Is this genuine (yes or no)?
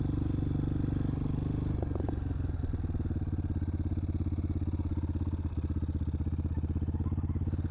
yes